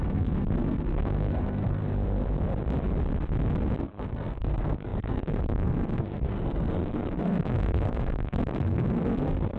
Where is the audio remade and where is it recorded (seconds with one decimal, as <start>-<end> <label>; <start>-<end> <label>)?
0.0-1.8 remade; 1.8-3.8 recorded; 3.8-9.6 remade